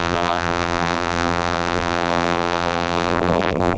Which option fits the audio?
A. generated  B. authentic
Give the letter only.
A